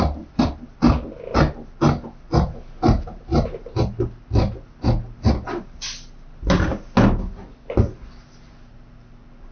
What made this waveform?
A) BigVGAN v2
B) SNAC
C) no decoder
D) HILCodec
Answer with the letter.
C